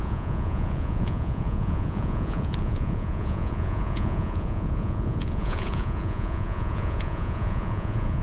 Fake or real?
fake